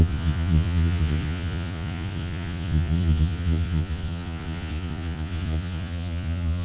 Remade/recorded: remade